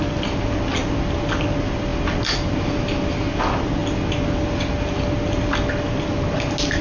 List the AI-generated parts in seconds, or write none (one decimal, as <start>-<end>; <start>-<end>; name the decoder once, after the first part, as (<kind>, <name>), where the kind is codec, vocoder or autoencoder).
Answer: none